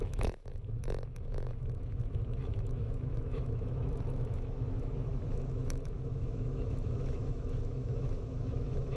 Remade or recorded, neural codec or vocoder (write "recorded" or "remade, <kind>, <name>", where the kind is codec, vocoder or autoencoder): remade, autoencoder, DAC-VAE